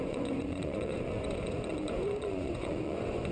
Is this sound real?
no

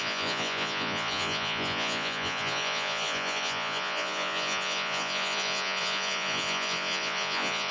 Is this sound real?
no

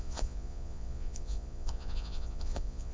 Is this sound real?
no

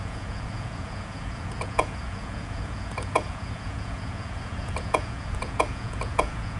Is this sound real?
no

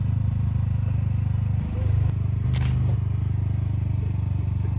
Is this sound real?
yes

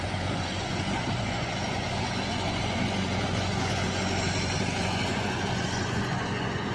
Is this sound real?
no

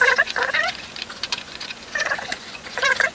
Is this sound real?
no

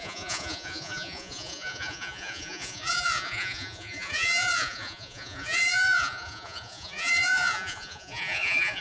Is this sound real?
no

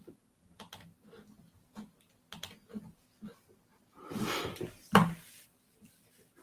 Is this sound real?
yes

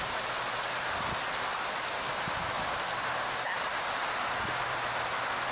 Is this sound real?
yes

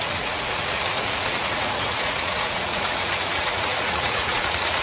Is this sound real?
no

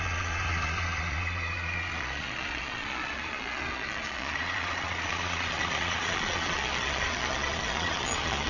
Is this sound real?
no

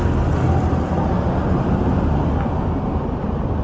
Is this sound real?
yes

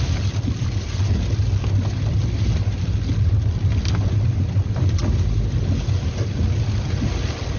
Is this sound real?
yes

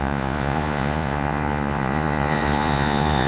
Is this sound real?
no